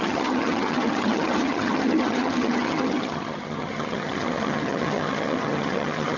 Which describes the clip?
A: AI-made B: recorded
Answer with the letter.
A